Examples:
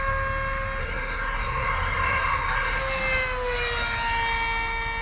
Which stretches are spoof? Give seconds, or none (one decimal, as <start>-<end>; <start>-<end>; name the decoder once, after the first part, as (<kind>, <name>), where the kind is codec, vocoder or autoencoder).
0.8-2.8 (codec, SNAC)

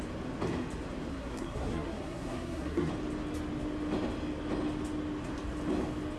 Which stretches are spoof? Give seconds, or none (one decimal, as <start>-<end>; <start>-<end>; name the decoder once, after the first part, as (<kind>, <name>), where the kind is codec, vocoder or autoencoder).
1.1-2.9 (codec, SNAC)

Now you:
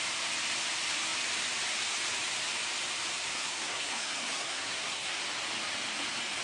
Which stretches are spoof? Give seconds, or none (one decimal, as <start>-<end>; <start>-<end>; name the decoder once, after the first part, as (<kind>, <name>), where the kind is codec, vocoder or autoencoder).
3.2-5.2 (codec, SNAC)

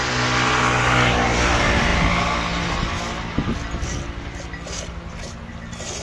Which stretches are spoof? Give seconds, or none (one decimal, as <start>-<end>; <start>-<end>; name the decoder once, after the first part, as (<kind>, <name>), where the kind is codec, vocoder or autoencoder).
none

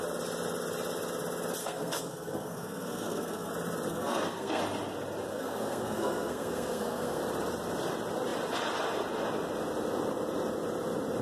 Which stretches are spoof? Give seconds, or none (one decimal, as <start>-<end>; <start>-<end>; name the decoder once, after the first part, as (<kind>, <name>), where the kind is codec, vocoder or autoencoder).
1.6-3.5 (codec, SNAC); 3.9-4.6; 5.3-7.2